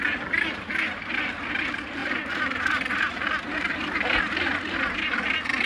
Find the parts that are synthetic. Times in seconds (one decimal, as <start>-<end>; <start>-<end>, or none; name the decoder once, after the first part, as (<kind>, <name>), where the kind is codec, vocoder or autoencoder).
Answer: none

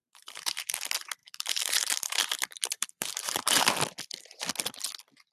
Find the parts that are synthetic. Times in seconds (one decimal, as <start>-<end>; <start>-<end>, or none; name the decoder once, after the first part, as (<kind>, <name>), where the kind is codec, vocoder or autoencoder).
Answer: 0.0-0.6 (vocoder, BigVGAN v2); 1.2-3.8

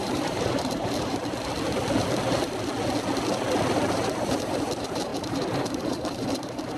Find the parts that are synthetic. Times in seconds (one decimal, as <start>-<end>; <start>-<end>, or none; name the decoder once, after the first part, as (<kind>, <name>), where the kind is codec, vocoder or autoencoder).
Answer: 0.0-1.2 (vocoder, BigVGAN v2); 3.7-6.8